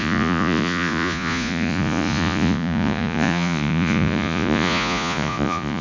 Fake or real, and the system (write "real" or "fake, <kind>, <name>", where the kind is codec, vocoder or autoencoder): fake, vocoder, Vocos